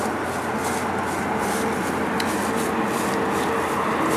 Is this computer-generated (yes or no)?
no